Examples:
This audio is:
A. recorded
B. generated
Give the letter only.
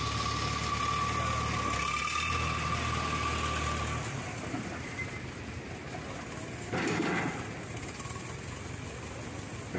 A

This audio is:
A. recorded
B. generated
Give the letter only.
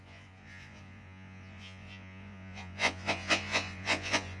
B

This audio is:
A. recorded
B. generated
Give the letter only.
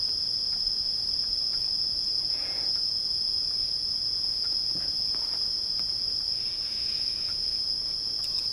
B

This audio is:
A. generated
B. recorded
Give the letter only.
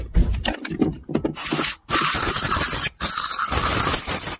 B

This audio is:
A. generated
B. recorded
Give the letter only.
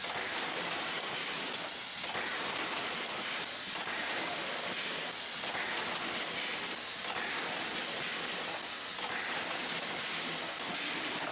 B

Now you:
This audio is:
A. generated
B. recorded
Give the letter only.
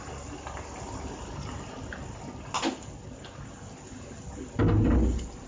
B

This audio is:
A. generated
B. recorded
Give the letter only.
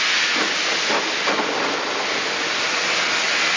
B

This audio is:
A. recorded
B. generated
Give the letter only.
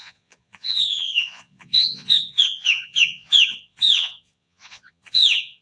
B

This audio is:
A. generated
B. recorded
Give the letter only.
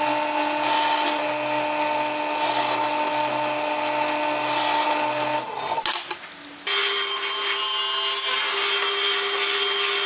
B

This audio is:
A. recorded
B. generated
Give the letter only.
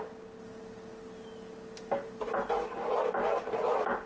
A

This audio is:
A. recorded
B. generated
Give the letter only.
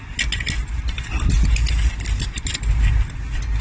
A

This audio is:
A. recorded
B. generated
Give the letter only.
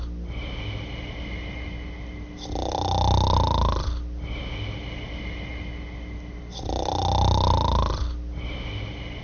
A